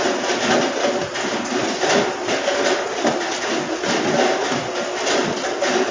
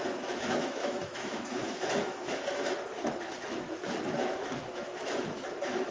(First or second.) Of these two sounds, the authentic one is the first